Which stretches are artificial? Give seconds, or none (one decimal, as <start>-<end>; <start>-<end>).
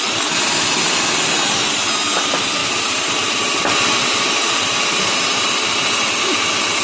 2.6-4.2